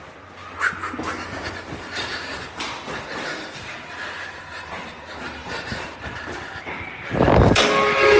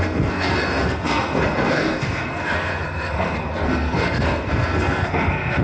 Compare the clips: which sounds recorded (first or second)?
first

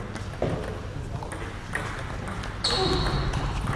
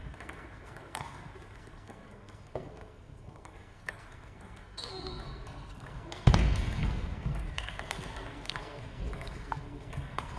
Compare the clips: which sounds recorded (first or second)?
first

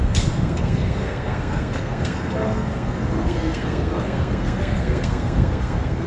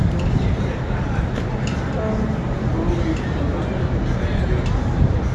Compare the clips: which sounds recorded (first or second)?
second